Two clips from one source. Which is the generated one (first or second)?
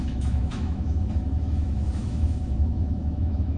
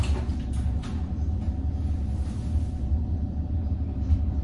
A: first